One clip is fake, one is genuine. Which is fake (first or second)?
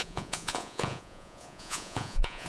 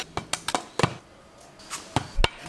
first